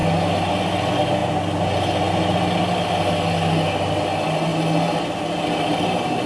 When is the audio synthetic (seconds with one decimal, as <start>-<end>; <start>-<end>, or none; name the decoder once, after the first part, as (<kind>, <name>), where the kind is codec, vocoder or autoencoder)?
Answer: none